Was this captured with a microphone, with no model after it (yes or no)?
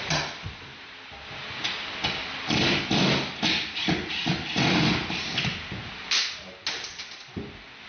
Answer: yes